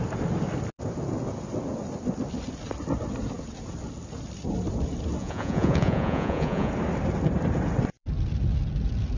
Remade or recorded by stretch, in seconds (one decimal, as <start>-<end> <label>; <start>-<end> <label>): 0.0-5.2 recorded; 5.2-6.7 remade; 6.7-9.2 recorded